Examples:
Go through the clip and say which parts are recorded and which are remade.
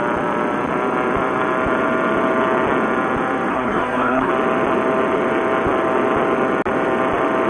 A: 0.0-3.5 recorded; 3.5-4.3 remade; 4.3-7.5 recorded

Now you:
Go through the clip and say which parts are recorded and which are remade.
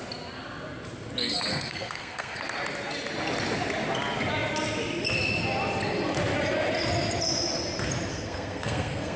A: 0.0-1.5 recorded; 1.5-2.4 remade; 2.4-8.1 recorded; 8.1-9.2 remade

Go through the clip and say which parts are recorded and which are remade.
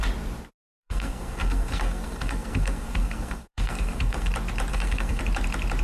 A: 0.0-0.8 recorded; 0.8-4.3 remade; 4.3-4.7 recorded; 4.7-5.2 remade; 5.2-5.8 recorded